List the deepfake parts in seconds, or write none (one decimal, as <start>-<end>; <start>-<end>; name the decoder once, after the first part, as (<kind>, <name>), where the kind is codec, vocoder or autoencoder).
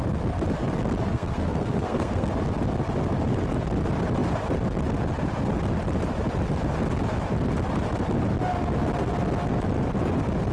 1.1-2.3 (codec, SNAC)